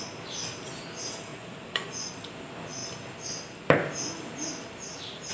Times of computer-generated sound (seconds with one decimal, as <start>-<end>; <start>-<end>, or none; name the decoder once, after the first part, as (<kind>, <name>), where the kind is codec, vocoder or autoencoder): 1.3-2.1 (vocoder, Vocos)